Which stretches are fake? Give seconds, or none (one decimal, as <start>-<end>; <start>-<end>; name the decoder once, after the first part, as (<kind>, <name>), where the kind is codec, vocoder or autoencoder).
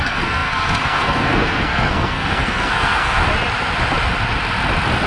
0.0-3.2 (codec, SNAC)